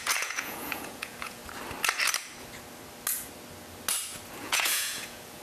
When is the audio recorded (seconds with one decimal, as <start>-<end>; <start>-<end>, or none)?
1.4-4.4